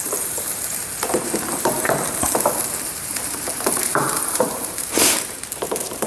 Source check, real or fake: fake